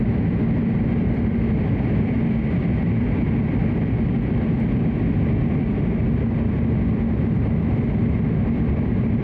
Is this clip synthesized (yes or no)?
no